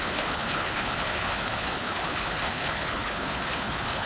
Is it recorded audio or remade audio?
remade